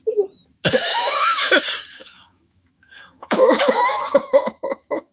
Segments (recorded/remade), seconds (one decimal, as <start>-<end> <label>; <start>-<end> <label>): 0.0-0.9 recorded; 0.9-1.6 remade; 1.6-2.0 recorded; 2.0-5.1 remade